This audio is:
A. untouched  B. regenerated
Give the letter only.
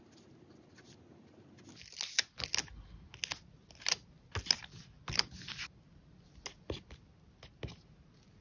A